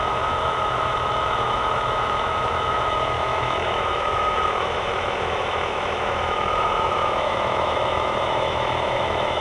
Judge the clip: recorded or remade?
remade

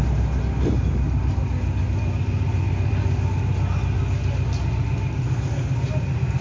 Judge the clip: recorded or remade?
recorded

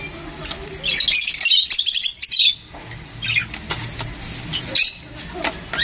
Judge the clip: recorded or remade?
recorded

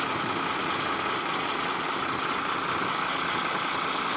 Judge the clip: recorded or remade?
recorded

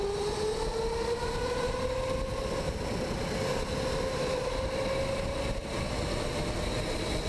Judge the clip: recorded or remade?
recorded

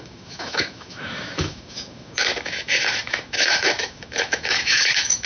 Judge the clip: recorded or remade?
remade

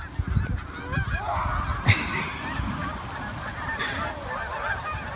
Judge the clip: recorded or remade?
recorded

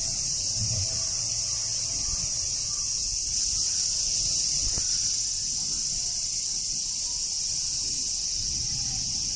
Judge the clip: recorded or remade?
recorded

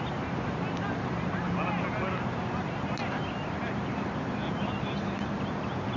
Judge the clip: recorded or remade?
recorded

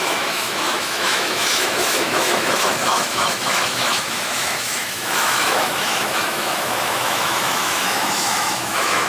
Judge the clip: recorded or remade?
remade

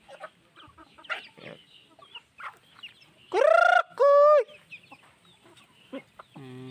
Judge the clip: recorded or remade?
recorded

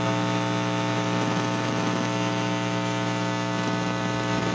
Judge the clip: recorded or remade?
remade